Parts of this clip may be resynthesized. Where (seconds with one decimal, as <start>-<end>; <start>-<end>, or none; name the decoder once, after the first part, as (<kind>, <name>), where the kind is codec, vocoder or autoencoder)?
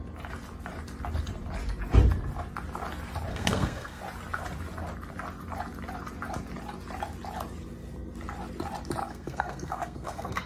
3.3-4.0 (codec, SNAC); 9.0-10.5